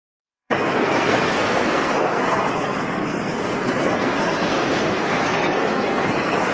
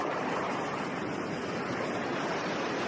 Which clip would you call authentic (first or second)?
second